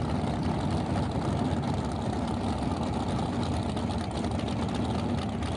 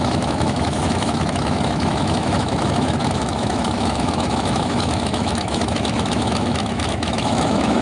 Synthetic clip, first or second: second